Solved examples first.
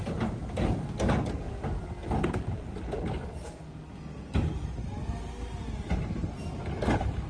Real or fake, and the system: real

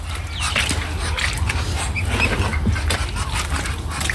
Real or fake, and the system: real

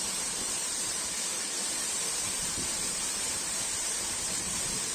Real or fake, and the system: fake, vocoder, BigVGAN v2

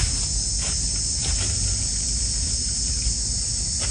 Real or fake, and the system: real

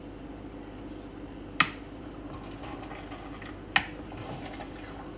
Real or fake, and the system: real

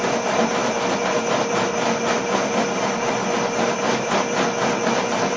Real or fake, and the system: real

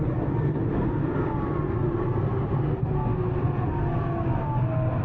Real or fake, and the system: real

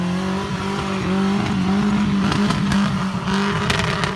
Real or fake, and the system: real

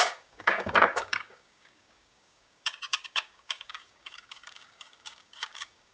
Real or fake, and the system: fake, codec, DAC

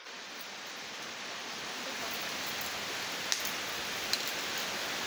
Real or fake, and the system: real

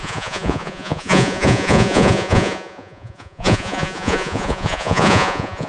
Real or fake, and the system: fake, vocoder, Vocos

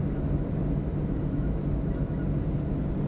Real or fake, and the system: real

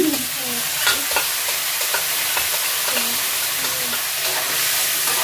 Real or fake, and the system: real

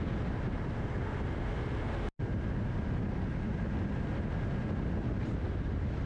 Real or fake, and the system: real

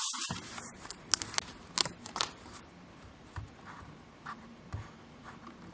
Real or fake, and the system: real